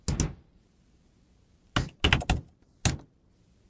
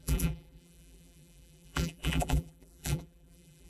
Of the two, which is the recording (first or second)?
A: first